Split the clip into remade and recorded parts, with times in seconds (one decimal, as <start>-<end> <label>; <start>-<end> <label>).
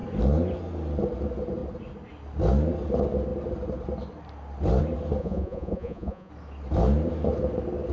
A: 0.0-5.2 recorded; 5.2-6.3 remade; 6.3-7.9 recorded